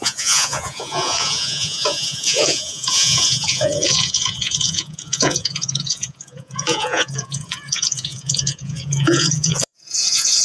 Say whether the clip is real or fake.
fake